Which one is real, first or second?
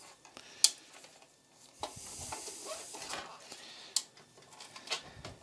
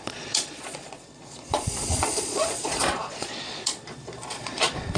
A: first